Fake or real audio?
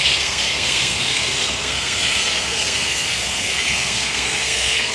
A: fake